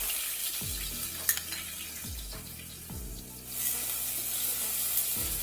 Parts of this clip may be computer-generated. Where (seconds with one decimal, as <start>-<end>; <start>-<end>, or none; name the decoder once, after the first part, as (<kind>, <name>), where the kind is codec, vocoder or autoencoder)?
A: 0.4-3.2 (vocoder, BigVGAN v2)